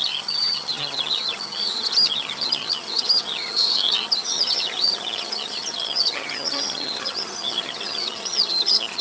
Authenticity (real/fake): fake